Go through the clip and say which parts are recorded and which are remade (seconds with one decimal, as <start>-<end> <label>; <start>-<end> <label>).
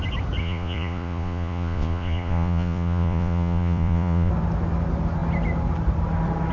0.0-0.4 recorded; 0.4-4.3 remade; 4.3-6.5 recorded